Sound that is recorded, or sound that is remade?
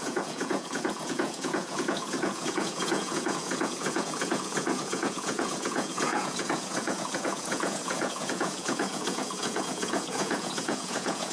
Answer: remade